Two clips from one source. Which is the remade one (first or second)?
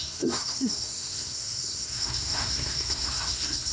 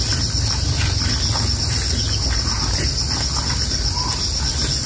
first